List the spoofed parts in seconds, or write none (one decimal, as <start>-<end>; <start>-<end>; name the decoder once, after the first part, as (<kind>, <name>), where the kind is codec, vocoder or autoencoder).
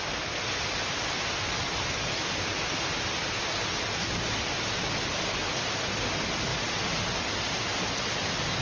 5.4-5.9 (vocoder, BigVGAN v2)